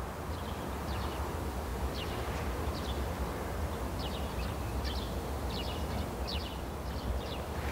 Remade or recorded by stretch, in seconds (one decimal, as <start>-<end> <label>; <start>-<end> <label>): 0.0-1.7 recorded; 1.7-2.8 remade; 2.8-6.3 recorded; 6.3-7.1 remade; 7.1-7.7 recorded